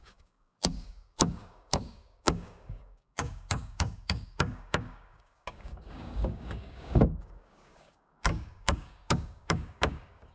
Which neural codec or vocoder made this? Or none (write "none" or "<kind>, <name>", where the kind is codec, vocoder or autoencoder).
codec, DAC